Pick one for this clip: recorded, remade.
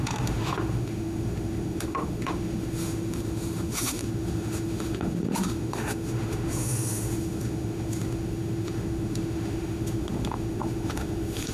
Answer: remade